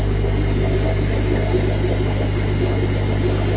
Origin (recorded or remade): recorded